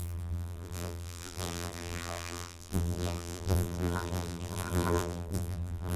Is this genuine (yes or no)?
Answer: no